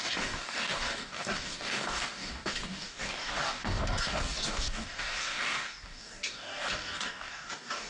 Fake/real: fake